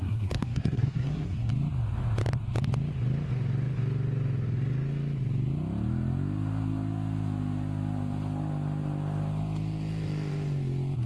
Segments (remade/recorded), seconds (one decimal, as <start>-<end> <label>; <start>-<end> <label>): 0.0-1.5 remade; 1.5-11.1 recorded

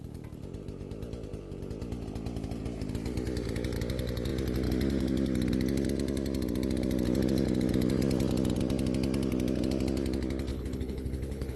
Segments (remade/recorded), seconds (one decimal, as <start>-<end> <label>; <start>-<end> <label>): 0.0-10.5 recorded; 10.5-11.6 remade

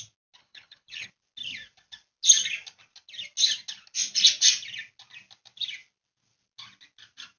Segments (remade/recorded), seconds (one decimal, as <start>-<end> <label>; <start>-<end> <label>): 0.0-0.4 recorded; 0.4-1.1 remade; 1.1-7.4 recorded

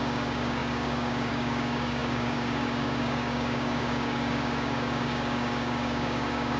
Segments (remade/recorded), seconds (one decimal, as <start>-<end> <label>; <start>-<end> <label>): 0.0-6.6 remade

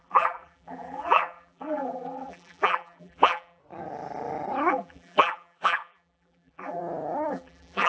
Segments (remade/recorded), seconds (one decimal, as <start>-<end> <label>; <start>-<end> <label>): 0.0-3.6 remade; 3.6-4.7 recorded; 4.7-6.8 remade; 6.8-7.3 recorded; 7.3-7.9 remade

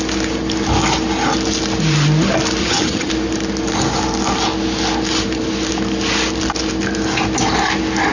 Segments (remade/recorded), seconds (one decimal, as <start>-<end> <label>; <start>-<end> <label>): 0.0-2.6 recorded; 2.6-3.1 remade; 3.1-8.1 recorded

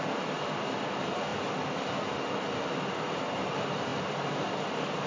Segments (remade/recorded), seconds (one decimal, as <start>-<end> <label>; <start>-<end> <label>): 0.0-5.1 recorded

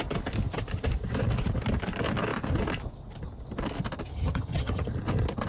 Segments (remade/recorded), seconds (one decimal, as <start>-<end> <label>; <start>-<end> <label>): 0.0-4.1 recorded; 4.1-4.9 remade; 4.9-5.5 recorded